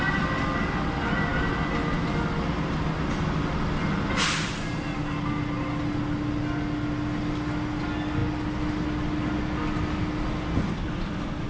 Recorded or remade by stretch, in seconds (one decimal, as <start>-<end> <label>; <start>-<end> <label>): 0.0-11.5 recorded